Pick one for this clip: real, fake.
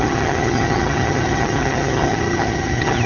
fake